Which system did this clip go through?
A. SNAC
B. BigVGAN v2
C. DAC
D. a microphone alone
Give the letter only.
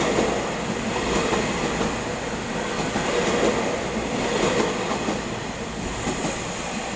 D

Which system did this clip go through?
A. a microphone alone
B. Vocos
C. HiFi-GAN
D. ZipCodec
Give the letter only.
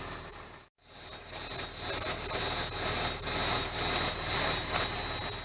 A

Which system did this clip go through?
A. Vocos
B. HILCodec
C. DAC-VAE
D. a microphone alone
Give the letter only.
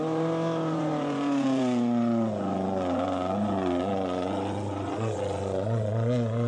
A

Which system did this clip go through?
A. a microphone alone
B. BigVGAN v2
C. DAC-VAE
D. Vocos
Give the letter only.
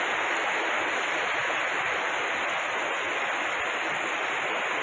A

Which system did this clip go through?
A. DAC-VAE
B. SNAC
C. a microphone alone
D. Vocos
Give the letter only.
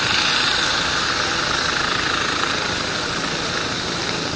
C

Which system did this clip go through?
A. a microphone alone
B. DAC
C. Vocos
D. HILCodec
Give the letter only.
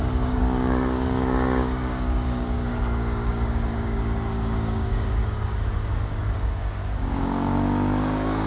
B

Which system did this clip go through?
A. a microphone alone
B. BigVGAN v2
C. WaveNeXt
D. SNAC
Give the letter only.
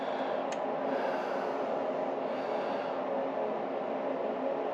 A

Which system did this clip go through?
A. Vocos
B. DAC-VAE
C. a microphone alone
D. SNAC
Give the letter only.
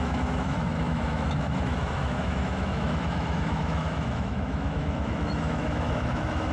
B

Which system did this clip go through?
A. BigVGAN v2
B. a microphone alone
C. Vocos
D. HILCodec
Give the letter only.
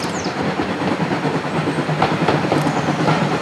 A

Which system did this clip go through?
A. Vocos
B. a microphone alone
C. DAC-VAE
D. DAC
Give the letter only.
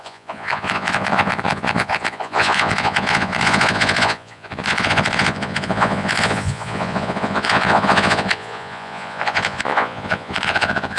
A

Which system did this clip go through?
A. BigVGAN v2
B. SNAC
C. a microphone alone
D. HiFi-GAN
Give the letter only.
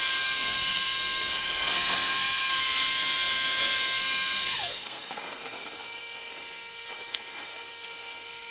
B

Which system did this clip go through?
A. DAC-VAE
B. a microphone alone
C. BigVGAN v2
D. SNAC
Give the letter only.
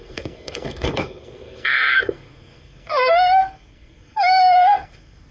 D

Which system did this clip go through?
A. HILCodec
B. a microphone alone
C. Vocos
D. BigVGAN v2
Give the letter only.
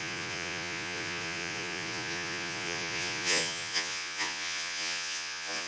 C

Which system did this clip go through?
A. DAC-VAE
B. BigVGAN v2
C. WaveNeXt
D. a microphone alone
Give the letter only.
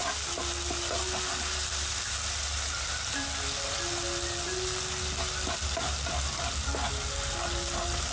D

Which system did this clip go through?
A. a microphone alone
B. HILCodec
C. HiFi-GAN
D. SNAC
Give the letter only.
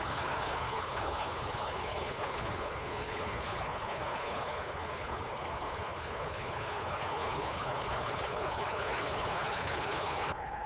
B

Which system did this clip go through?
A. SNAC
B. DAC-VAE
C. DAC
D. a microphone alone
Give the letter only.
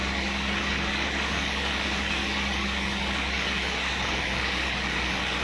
C